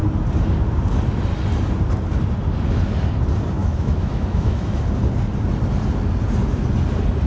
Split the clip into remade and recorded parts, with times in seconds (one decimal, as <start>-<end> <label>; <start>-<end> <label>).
0.0-3.6 recorded; 3.6-4.8 remade; 4.8-7.3 recorded